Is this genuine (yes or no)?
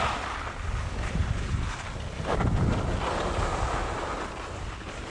yes